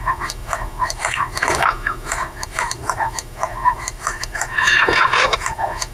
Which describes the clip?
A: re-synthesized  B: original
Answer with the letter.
A